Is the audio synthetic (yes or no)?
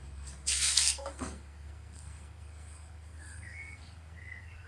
yes